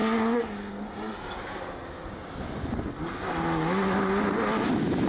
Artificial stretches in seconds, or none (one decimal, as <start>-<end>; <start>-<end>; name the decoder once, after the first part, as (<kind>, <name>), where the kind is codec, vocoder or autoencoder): none